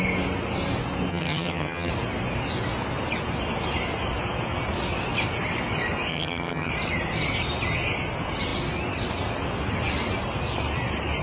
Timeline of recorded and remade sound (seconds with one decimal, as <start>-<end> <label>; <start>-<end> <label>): 0.0-1.1 recorded; 1.1-1.9 remade; 1.9-6.1 recorded; 6.1-6.7 remade; 6.7-11.2 recorded